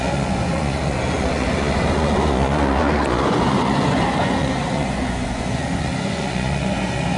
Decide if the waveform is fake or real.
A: fake